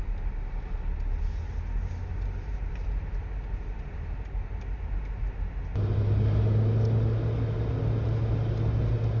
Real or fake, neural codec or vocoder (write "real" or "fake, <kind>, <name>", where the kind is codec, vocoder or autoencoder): real